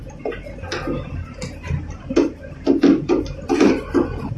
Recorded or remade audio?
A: recorded